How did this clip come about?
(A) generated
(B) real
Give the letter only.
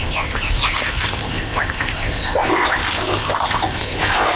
A